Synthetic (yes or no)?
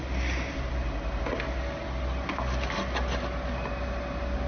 no